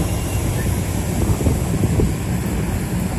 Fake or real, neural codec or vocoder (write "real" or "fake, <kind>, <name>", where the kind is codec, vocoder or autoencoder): real